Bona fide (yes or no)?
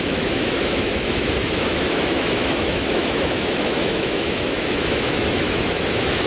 no